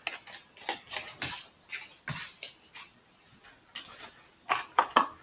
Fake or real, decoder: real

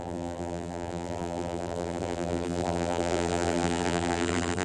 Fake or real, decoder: fake, vocoder, BigVGAN v2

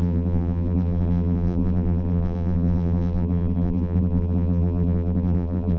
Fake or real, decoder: fake, vocoder, BigVGAN v2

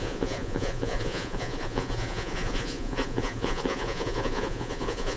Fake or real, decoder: fake, vocoder, Vocos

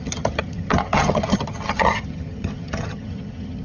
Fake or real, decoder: fake, vocoder, HiFi-GAN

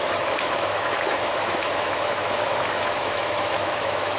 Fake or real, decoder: fake, autoencoder, DAC-VAE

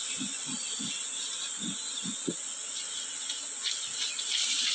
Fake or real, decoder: real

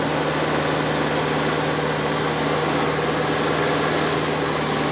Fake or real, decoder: real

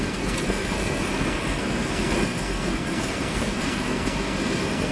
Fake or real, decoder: fake, codec, SNAC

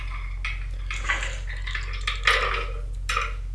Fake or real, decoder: real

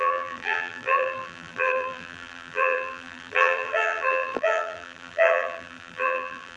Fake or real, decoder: fake, vocoder, BigVGAN v2